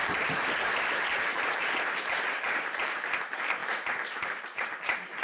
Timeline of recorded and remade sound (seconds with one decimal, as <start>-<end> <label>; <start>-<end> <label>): 0.0-3.1 remade; 3.1-3.6 recorded; 3.6-4.8 remade; 4.8-5.2 recorded